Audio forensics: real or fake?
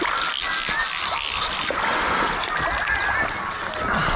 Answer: real